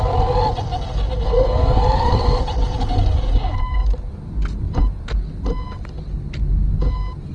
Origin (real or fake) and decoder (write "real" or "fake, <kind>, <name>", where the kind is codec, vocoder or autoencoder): real